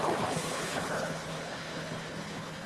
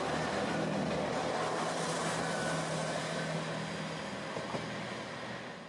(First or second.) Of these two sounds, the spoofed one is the first